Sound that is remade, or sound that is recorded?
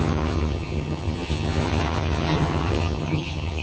remade